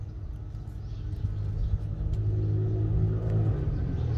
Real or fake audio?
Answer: real